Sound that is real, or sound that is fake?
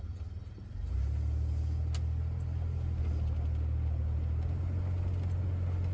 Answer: real